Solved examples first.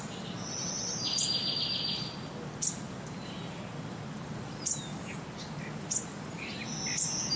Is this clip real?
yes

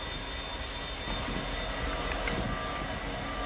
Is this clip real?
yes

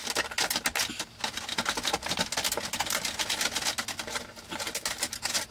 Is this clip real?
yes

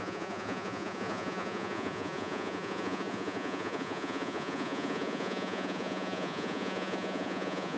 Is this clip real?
no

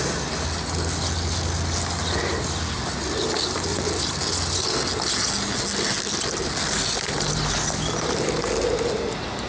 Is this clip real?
yes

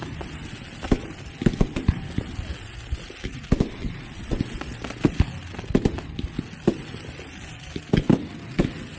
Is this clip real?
yes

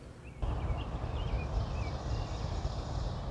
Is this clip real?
yes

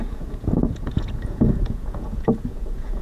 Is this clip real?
no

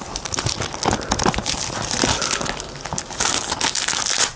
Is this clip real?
yes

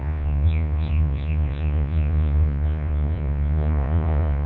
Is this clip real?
no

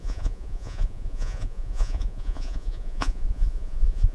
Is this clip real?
no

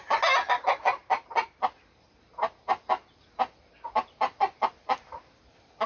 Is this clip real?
yes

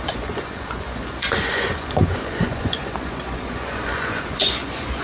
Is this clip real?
no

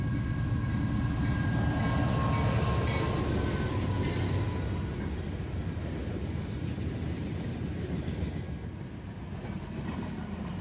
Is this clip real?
yes